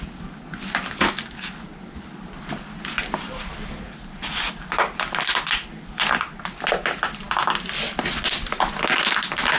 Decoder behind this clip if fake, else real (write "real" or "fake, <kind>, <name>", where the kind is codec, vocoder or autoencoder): real